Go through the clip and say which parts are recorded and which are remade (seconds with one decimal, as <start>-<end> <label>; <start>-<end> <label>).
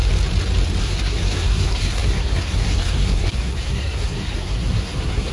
0.0-0.8 recorded; 0.8-5.3 remade